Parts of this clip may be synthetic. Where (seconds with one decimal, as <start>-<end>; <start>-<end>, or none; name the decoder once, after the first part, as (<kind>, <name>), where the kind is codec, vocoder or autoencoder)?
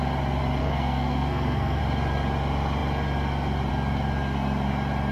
0.6-1.8 (codec, SNAC)